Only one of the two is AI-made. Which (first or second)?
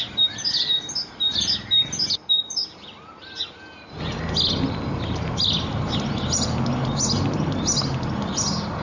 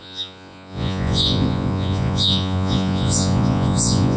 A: second